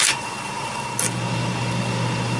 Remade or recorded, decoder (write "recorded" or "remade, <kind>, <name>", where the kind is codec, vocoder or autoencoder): recorded